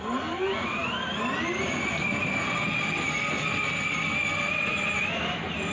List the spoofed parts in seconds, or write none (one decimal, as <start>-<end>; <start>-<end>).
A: none